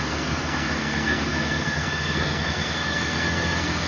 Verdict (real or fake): fake